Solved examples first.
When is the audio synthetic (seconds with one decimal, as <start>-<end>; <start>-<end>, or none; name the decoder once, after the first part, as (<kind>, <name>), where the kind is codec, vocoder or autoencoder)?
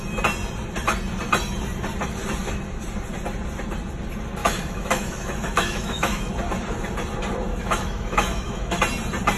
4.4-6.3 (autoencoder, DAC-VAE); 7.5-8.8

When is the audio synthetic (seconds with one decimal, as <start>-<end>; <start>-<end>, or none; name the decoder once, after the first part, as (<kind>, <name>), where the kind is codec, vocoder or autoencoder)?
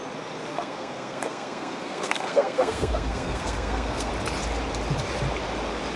0.5-4.1 (codec, SNAC)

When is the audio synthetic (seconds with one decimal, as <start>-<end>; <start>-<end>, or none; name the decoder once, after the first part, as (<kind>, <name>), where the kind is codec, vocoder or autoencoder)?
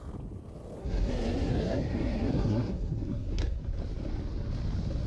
0.8-3.6 (codec, SNAC)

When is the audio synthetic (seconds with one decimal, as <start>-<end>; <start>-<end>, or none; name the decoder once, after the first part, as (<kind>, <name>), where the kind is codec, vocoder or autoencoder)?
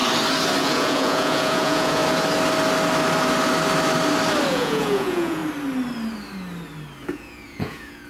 0.6-2.0 (vocoder, Vocos); 4.5-5.4; 7.1-8.1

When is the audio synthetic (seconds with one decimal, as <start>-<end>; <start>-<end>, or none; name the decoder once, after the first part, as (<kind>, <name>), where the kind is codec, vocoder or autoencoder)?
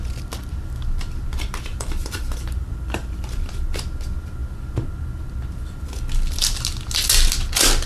1.7-3.8 (vocoder, BigVGAN v2)